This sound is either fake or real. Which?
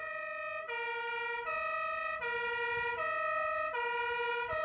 real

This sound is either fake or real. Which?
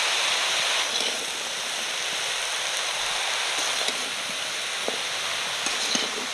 real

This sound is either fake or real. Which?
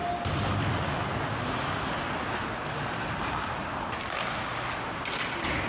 real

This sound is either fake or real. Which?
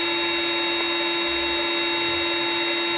real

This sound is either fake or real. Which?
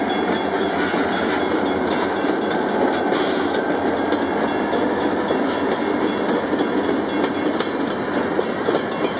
real